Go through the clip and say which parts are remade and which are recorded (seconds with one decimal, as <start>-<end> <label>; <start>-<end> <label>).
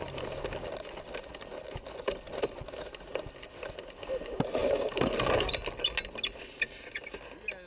0.0-7.7 recorded